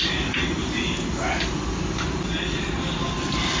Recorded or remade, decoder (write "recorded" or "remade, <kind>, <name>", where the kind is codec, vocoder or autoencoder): recorded